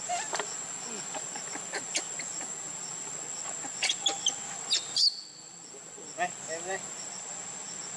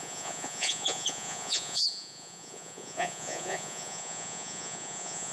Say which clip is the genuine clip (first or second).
first